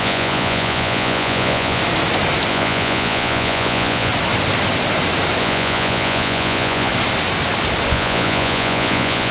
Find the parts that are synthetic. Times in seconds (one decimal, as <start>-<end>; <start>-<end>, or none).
0.0-1.8; 2.5-4.1; 5.4-6.9; 7.9-9.3